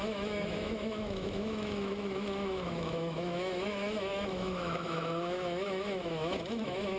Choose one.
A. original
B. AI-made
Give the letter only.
B